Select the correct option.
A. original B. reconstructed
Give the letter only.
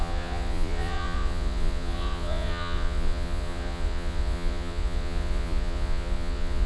B